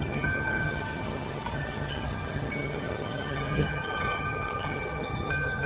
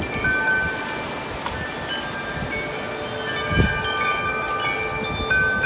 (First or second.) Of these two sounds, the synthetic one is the first